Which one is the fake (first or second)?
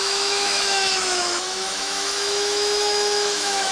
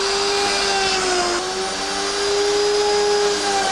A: first